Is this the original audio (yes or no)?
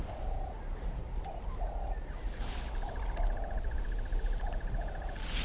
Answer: yes